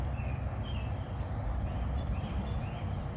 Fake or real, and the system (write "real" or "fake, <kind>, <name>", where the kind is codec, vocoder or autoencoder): real